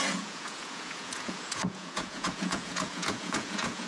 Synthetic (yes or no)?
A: yes